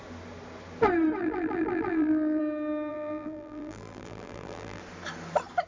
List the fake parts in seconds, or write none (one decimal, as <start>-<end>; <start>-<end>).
1.2-2.4; 2.9-4.8